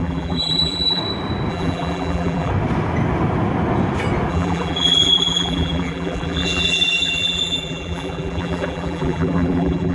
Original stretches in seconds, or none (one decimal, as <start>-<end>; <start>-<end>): 1.0-1.5; 2.5-4.3